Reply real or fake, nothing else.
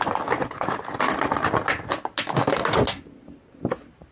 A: real